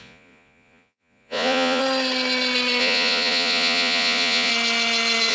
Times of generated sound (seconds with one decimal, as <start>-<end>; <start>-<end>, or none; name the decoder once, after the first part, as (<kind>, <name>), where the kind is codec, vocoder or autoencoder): 0.0-1.8 (vocoder, Vocos); 2.8-4.5